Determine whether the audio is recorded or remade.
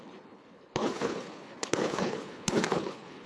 remade